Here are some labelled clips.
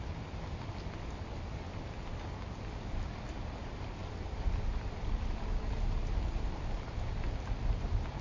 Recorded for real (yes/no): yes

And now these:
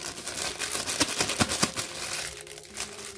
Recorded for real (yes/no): yes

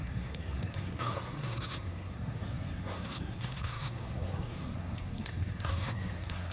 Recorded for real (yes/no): no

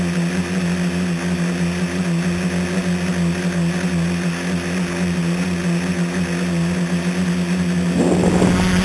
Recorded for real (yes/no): yes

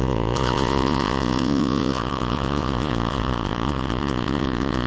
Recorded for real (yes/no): no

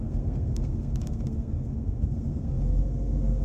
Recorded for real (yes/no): no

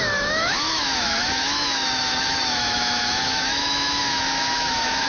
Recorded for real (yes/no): no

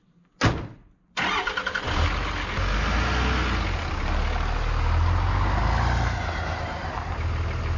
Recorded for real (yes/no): yes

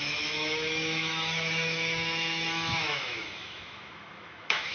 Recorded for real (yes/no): no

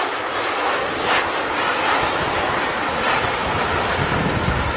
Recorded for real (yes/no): yes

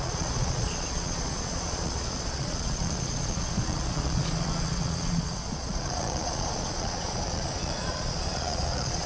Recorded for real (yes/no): no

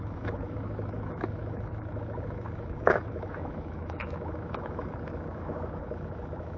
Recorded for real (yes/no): no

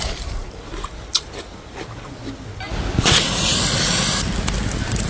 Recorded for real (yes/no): yes